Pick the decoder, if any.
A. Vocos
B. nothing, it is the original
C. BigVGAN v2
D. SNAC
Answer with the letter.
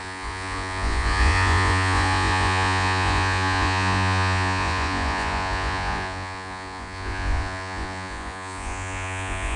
A